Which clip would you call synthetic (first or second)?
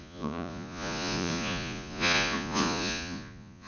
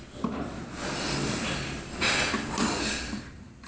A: first